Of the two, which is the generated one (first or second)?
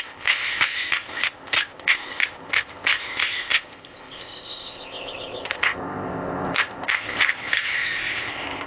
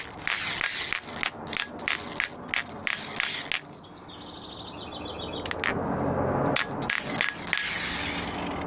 first